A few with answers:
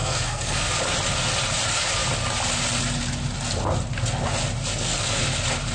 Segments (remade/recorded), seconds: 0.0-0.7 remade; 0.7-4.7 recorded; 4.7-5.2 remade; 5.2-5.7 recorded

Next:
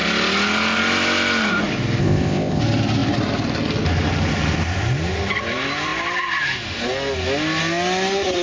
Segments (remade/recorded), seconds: 0.0-2.0 recorded; 2.0-2.6 remade; 2.6-8.4 recorded

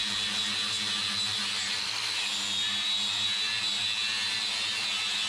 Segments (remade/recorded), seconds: 0.0-5.3 recorded

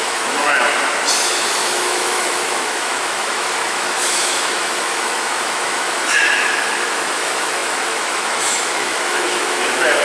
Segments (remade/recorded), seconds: 0.0-0.5 remade; 0.5-1.3 recorded; 1.3-10.0 remade

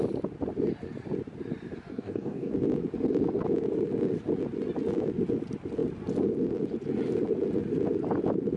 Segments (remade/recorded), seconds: 0.0-1.9 recorded; 1.9-2.5 remade; 2.5-8.6 recorded

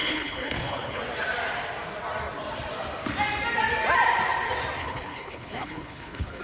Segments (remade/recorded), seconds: 0.0-1.0 remade; 1.0-4.8 recorded; 4.8-6.4 remade

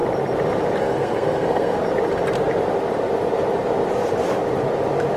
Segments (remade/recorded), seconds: 0.0-0.8 recorded; 0.8-1.8 remade; 1.8-5.2 recorded